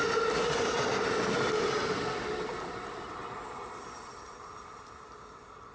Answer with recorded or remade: recorded